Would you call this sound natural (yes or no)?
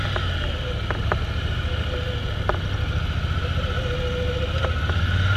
yes